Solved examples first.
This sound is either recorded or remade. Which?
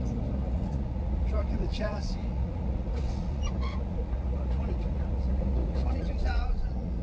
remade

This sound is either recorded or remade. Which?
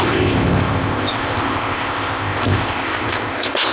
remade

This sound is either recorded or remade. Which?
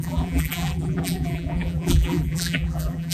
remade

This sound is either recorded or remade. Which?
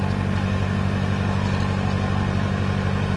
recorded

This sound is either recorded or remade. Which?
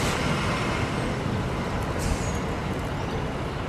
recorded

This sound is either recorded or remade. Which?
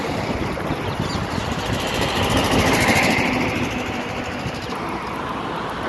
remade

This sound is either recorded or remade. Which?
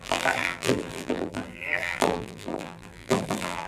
remade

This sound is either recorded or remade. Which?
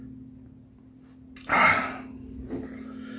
recorded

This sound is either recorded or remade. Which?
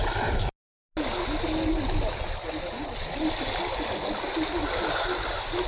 recorded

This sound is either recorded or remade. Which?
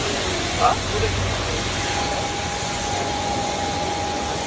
remade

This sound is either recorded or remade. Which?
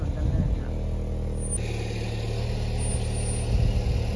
recorded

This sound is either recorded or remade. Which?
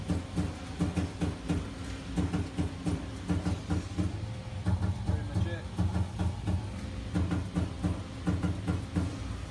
recorded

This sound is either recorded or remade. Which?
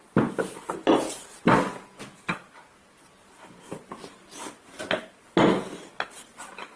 recorded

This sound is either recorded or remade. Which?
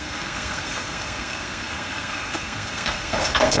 remade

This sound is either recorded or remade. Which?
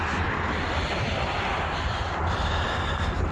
recorded